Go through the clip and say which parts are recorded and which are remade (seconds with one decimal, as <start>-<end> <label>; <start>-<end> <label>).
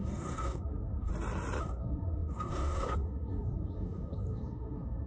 0.0-1.1 remade; 1.1-1.6 recorded; 1.6-5.1 remade